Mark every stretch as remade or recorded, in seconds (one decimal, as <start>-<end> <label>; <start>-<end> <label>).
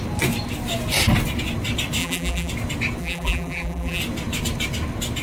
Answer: 0.0-2.0 recorded; 2.0-2.5 remade; 2.5-3.0 recorded; 3.0-4.0 remade; 4.0-5.2 recorded